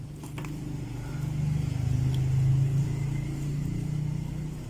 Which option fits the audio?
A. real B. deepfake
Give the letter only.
A